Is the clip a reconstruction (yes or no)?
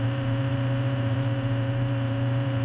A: yes